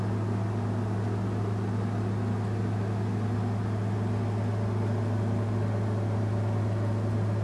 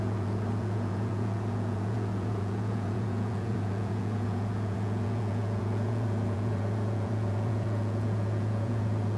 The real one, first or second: first